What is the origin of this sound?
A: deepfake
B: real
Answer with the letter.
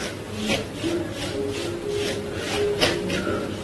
B